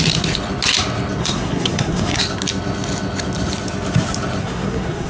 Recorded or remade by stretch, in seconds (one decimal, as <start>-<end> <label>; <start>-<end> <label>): 0.0-1.2 recorded; 1.2-2.2 remade; 2.2-4.4 recorded; 4.4-5.1 remade

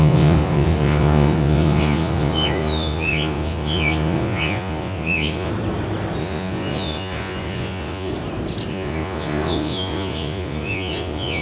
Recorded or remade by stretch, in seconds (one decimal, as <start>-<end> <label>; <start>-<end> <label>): 0.0-5.5 remade; 5.5-6.2 recorded; 6.2-8.1 remade; 8.1-8.7 recorded; 8.7-11.4 remade

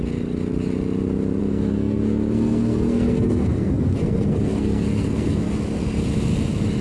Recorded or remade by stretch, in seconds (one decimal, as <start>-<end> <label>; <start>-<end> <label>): 0.0-1.4 recorded; 1.4-5.5 remade; 5.5-6.8 recorded

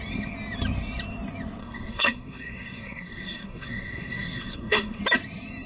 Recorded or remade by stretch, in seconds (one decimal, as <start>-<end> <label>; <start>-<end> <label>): 0.0-1.6 recorded; 1.6-5.0 remade; 5.0-5.7 recorded

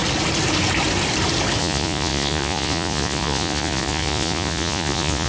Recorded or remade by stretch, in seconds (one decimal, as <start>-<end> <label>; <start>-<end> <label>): 0.0-1.6 recorded; 1.6-5.3 remade

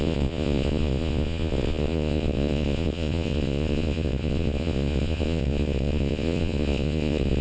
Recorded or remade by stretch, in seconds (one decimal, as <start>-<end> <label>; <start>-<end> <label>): 0.0-7.4 remade